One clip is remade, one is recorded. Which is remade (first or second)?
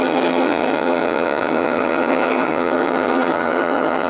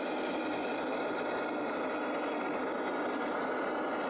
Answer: first